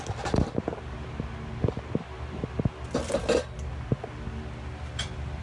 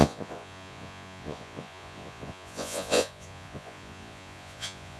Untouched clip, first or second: first